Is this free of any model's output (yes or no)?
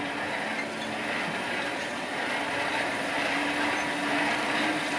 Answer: yes